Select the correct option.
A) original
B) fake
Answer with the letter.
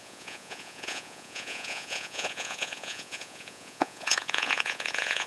B